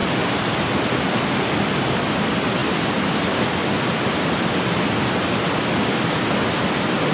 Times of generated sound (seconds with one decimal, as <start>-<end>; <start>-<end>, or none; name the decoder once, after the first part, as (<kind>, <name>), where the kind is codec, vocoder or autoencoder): none